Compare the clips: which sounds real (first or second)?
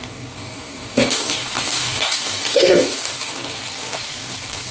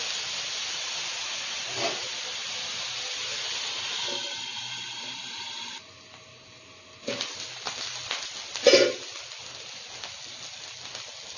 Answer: second